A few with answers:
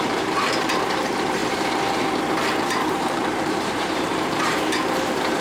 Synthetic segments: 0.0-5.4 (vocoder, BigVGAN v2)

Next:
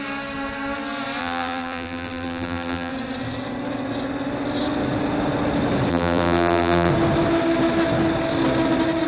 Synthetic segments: 1.2-2.9 (vocoder, BigVGAN v2); 5.9-6.9

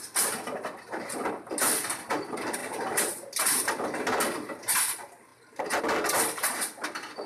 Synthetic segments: 2.6-3.7 (vocoder, BigVGAN v2)

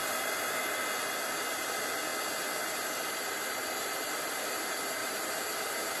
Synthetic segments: 0.0-0.6 (vocoder, BigVGAN v2); 5.0-6.0

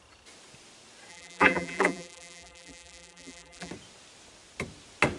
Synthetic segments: 1.1-3.7 (vocoder, BigVGAN v2)

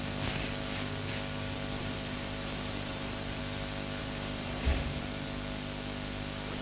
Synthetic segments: 1.8-3.4 (vocoder, BigVGAN v2); 4.0-5.0